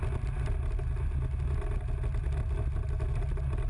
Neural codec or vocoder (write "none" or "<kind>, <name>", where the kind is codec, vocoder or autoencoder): none